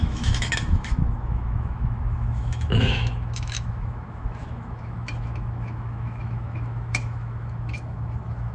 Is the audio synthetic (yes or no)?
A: yes